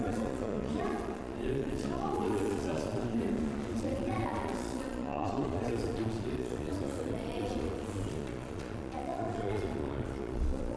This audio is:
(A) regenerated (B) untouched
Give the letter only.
A